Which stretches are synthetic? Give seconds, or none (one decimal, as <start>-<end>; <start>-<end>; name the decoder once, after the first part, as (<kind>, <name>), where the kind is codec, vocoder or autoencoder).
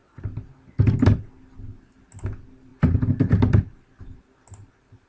none